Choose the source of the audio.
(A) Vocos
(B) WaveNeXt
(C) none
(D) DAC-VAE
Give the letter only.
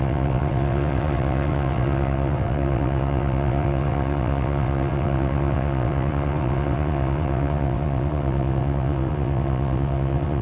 B